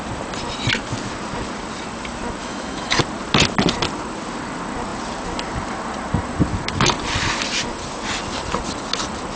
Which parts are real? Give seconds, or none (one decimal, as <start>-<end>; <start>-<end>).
0.0-2.4; 3.0-9.4